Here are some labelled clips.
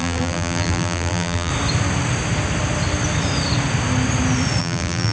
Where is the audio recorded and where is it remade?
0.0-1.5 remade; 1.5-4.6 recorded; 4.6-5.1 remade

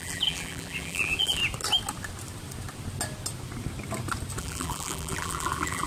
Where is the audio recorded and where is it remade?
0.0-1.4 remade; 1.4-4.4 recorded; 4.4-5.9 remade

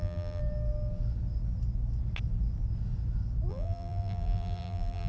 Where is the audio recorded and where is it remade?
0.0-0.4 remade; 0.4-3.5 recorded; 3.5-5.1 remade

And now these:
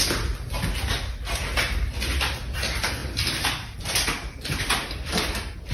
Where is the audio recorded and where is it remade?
0.0-3.0 recorded; 3.0-5.7 remade

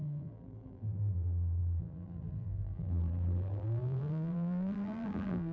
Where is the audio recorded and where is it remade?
0.0-5.5 remade

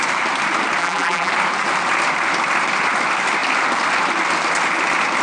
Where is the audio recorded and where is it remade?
0.0-0.8 recorded; 0.8-1.3 remade; 1.3-5.2 recorded